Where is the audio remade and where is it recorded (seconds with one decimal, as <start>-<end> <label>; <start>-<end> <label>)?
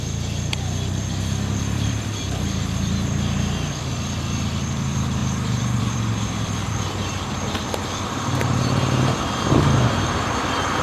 0.0-10.8 remade